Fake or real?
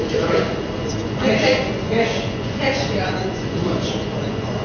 fake